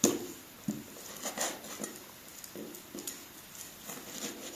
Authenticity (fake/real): real